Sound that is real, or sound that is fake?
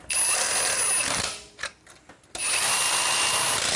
real